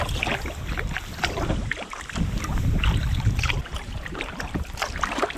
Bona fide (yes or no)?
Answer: no